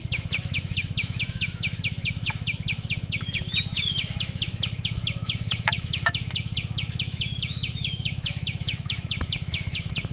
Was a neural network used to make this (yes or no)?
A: yes